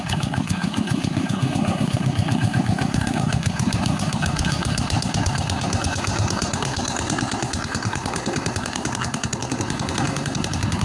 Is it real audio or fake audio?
fake